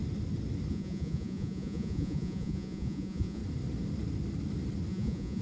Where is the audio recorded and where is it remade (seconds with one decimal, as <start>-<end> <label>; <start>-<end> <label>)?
0.0-0.7 recorded; 0.7-3.4 remade; 3.4-4.9 recorded; 4.9-5.4 remade